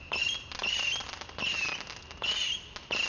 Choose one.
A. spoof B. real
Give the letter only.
B